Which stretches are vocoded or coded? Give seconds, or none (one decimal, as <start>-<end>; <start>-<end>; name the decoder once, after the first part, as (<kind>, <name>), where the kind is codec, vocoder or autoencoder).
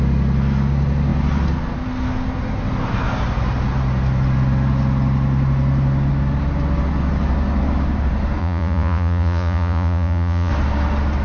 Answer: 8.4-10.5 (vocoder, Vocos)